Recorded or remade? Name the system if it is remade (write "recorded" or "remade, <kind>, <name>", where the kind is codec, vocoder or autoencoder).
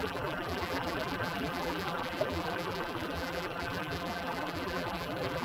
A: remade, vocoder, BigVGAN v2